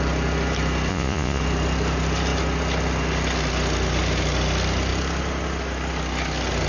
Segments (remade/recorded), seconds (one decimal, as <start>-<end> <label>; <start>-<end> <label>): 0.0-0.9 recorded; 0.9-1.4 remade; 1.4-6.7 recorded